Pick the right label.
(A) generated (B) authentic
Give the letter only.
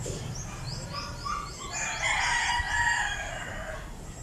B